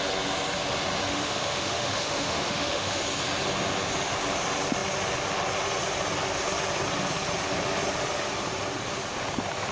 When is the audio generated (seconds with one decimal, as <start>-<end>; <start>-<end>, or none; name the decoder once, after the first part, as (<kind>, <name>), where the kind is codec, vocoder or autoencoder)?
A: 1.1-3.0 (autoencoder, DAC-VAE)